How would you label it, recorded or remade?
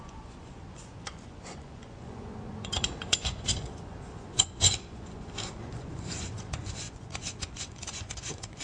remade